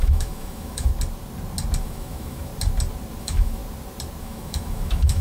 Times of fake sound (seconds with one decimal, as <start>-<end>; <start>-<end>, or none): 0.0-0.9; 1.8-2.5; 3.2-3.6; 4.2-5.2